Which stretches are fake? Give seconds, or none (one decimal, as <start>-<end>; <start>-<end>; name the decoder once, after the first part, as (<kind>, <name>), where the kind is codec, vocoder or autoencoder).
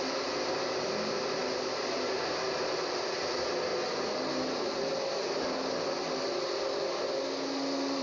0.0-1.4 (vocoder, BigVGAN v2); 2.1-3.7